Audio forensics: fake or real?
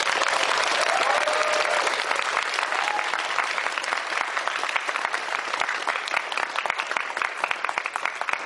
real